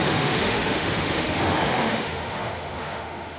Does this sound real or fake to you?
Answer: fake